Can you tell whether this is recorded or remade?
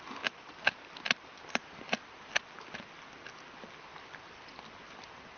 recorded